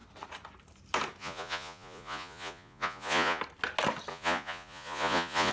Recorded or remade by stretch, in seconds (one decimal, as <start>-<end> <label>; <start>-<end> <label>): 0.0-1.2 recorded; 1.2-3.4 remade; 3.4-4.1 recorded; 4.1-5.5 remade